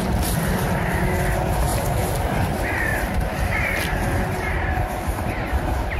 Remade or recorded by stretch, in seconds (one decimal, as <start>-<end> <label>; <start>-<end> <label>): 0.0-2.9 recorded; 2.9-6.0 remade